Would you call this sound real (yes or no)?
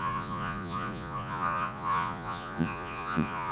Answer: no